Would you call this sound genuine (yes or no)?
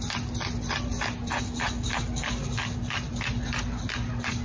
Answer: yes